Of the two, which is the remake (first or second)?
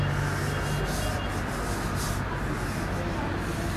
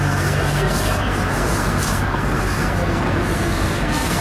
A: second